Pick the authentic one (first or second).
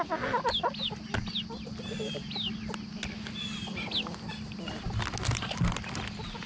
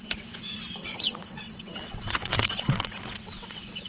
first